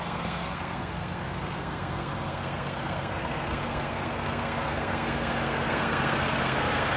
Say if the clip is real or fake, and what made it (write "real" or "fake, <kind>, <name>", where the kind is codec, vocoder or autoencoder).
fake, codec, SNAC